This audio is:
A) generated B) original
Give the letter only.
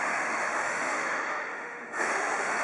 A